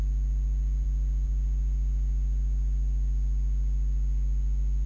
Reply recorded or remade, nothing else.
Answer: recorded